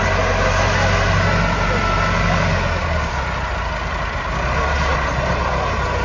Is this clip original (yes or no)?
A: yes